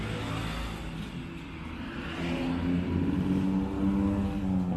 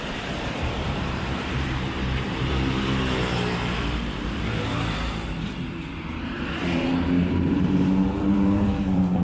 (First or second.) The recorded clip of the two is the first